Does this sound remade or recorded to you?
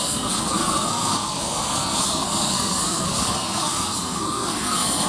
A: remade